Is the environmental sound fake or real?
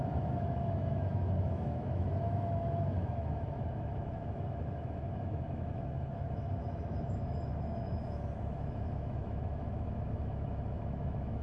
fake